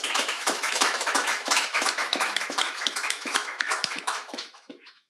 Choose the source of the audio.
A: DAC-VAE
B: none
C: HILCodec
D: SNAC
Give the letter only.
A